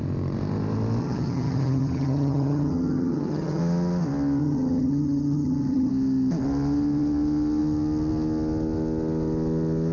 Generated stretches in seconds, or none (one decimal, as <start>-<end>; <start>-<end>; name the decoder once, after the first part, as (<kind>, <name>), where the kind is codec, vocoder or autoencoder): 1.0-3.6 (vocoder, HiFi-GAN); 4.4-5.9

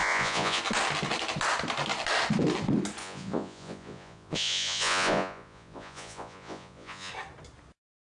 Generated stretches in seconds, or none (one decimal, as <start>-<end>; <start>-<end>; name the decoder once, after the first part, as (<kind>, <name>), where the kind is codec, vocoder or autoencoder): 0.0-0.6 (vocoder, Vocos); 3.0-7.1

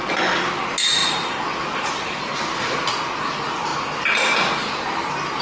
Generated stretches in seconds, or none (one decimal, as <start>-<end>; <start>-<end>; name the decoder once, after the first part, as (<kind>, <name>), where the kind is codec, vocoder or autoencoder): none

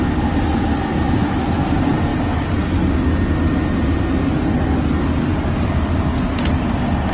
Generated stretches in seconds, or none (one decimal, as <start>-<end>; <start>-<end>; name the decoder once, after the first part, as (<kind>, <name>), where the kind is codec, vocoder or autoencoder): none

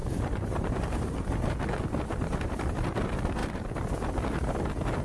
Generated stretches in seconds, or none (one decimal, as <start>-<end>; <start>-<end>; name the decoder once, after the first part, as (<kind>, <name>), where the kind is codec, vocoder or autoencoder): 0.0-1.4 (vocoder, BigVGAN v2)